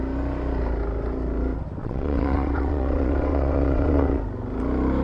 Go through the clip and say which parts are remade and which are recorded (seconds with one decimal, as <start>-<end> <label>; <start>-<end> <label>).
0.0-1.8 recorded; 1.8-4.2 remade; 4.2-5.0 recorded